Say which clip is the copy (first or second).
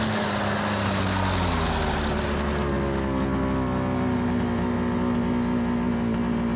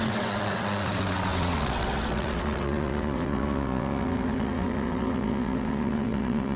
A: second